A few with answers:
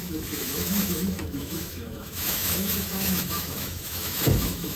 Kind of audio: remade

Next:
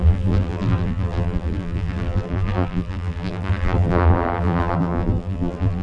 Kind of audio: remade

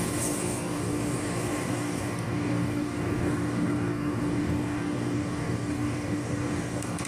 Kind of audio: remade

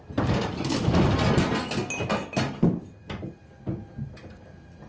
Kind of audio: recorded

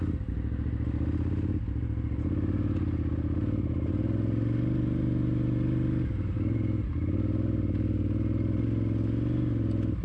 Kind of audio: recorded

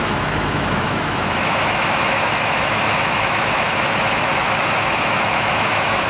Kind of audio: remade